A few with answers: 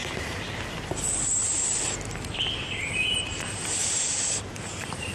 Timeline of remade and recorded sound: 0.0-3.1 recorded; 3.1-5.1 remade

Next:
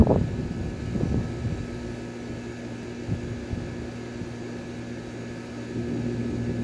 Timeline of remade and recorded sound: 0.0-6.6 recorded